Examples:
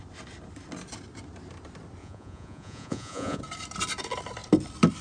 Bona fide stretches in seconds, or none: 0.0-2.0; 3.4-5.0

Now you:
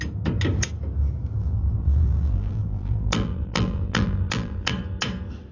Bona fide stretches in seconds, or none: 0.0-1.4; 4.7-5.5

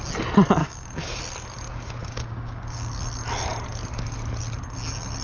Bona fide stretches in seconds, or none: 0.0-0.6; 1.2-2.0; 2.9-5.2